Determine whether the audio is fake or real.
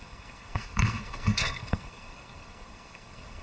fake